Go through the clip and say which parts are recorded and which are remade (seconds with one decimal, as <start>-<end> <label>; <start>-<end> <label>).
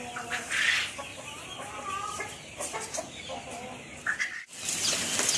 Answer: 0.0-5.4 recorded